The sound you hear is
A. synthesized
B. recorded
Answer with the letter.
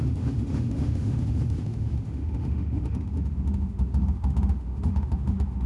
A